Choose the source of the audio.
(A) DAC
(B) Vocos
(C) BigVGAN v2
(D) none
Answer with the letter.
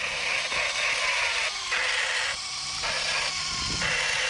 D